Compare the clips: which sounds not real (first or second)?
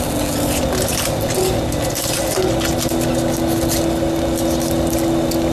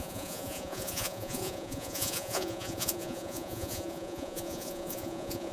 second